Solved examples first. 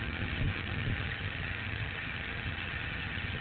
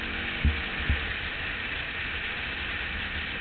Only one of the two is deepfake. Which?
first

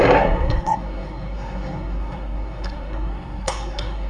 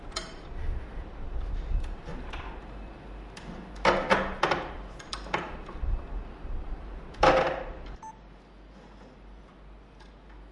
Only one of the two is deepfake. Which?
first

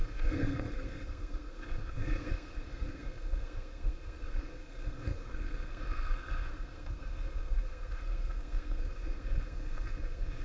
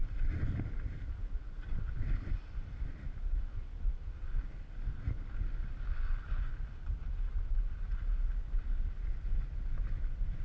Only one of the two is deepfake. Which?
first